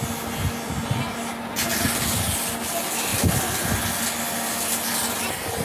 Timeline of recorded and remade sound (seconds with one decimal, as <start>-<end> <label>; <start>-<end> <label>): 0.0-5.6 recorded